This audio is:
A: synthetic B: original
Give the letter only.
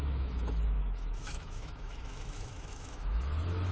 A